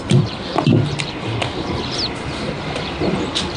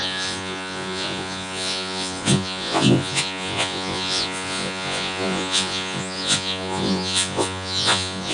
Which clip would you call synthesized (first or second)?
second